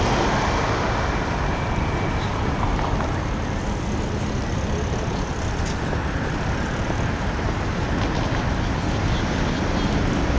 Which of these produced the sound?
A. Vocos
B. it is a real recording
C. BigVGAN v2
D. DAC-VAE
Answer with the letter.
B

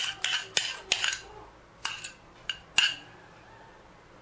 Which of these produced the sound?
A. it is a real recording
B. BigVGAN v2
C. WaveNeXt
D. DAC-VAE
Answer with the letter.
A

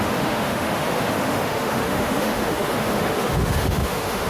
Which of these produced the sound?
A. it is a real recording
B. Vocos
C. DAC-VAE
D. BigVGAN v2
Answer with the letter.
C